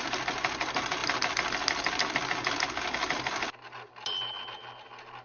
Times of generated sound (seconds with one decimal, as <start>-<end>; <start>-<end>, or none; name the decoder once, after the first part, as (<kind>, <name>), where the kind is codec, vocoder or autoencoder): none